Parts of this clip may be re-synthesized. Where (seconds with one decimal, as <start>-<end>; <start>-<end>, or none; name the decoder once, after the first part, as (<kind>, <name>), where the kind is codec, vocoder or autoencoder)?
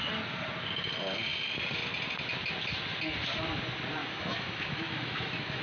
4.0-5.6 (autoencoder, DAC-VAE)